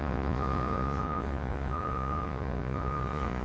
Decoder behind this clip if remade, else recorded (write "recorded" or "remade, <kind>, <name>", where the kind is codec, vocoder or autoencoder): remade, vocoder, Vocos